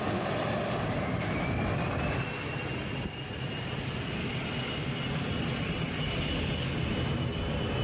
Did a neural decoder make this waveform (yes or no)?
no